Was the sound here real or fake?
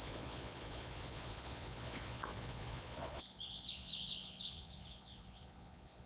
fake